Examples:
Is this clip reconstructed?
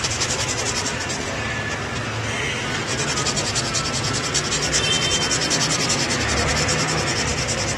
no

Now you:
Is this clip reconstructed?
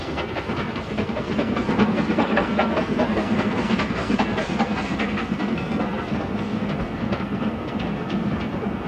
yes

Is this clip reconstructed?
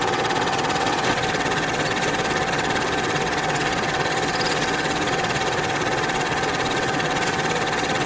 yes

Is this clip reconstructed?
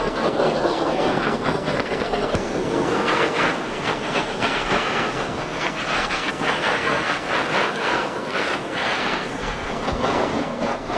yes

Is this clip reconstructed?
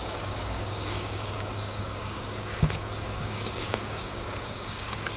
yes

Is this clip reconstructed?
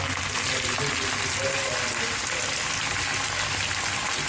no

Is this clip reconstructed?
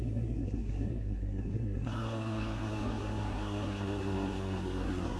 yes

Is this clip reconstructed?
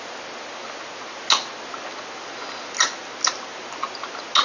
no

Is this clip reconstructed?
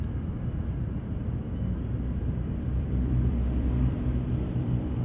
yes